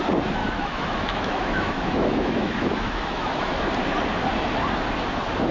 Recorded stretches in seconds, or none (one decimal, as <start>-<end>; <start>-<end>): 0.0-0.4; 3.7-5.5